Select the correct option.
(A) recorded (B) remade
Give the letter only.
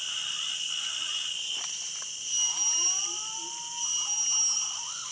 A